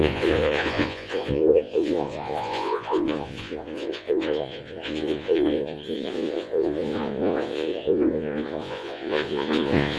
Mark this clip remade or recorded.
remade